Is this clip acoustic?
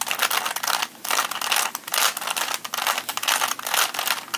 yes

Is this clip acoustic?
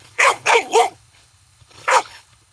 no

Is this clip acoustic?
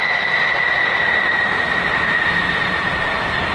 yes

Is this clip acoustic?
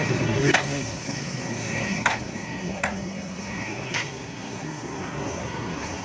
no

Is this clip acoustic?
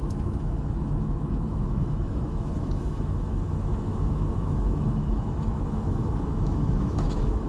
no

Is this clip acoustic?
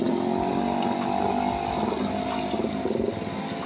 yes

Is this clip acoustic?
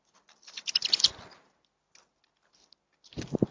yes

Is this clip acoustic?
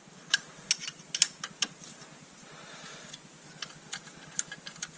yes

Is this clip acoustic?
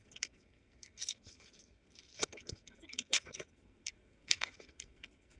no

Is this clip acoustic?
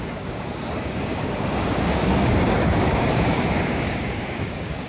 no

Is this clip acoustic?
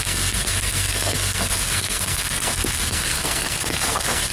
no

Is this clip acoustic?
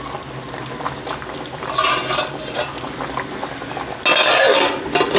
yes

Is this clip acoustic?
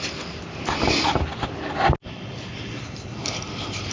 yes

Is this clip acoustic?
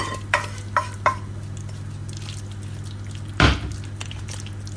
yes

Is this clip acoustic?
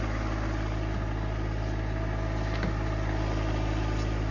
yes